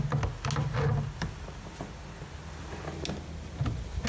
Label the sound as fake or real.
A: real